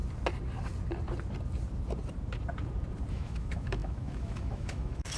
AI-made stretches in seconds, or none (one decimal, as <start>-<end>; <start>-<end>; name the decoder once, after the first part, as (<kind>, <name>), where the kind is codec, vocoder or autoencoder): 3.1-5.2 (autoencoder, DAC-VAE)

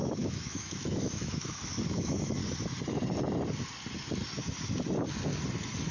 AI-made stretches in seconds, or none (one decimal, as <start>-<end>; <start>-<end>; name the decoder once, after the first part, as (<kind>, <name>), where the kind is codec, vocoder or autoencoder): 0.0-2.4 (autoencoder, DAC-VAE)